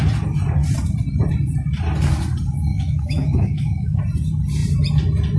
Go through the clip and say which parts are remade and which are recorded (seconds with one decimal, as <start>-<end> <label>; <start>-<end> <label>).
0.0-2.7 recorded; 2.7-4.0 remade; 4.0-5.4 recorded